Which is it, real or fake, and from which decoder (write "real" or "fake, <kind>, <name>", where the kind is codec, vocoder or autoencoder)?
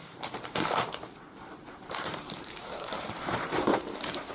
fake, vocoder, BigVGAN v2